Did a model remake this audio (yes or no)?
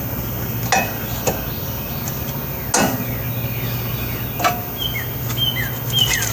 no